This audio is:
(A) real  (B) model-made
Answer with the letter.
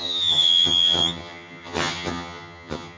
B